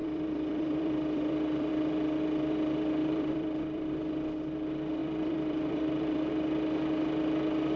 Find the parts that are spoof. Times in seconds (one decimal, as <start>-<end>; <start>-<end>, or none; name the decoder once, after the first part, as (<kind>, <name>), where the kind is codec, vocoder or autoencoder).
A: 0.0-1.7 (vocoder, BigVGAN v2); 3.0-4.0; 5.0-6.3